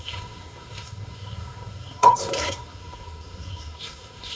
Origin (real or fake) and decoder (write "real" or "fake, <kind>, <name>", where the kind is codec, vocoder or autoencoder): fake, codec, SNAC